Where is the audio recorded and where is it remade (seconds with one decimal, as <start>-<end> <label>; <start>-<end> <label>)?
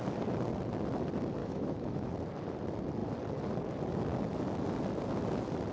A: 0.0-1.4 recorded; 1.4-2.1 remade; 2.1-5.7 recorded